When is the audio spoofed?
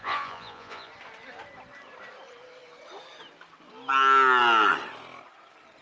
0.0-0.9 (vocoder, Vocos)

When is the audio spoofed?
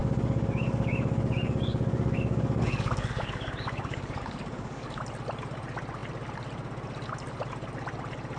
0.0-5.0 (codec, DAC)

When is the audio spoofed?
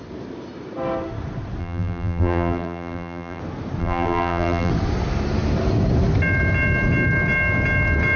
1.6-3.4 (vocoder, BigVGAN v2); 3.8-4.7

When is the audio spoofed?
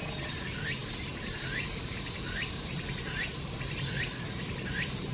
none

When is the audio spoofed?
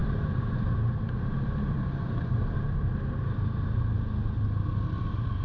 0.0-2.9 (vocoder, BigVGAN v2)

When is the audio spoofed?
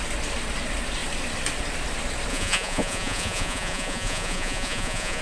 2.3-5.2 (vocoder, Vocos)